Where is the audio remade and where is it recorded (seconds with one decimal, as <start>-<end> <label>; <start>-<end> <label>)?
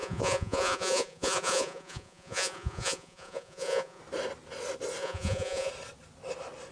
0.0-4.0 remade; 4.0-5.0 recorded; 5.0-5.7 remade; 5.7-6.7 recorded